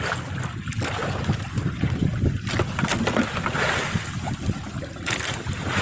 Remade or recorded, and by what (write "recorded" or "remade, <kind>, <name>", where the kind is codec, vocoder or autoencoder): recorded